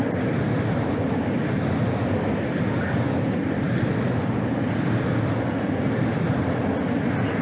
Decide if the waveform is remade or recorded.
recorded